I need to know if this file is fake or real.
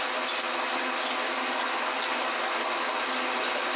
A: real